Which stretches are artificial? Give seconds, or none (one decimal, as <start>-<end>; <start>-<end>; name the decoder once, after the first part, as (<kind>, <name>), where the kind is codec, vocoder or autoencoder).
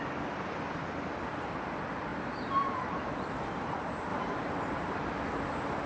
none